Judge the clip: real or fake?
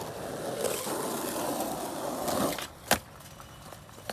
real